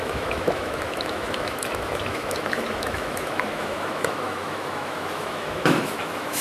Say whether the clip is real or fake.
fake